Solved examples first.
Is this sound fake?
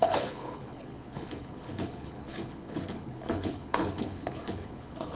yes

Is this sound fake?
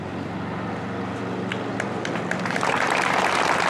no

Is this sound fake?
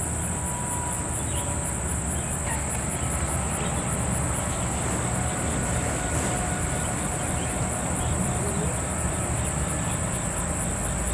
no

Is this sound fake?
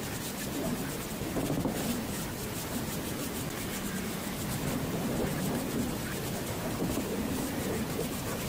no